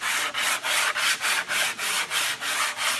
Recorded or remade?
recorded